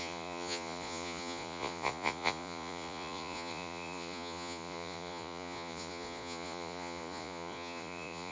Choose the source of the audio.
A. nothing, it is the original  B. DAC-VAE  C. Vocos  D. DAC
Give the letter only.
C